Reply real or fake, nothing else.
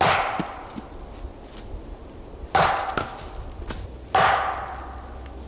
real